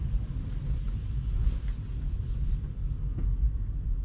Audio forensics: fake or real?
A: real